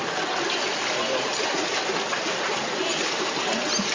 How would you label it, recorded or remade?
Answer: recorded